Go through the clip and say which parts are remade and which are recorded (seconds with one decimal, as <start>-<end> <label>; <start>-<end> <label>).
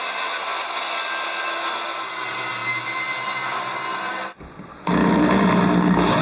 0.0-6.2 recorded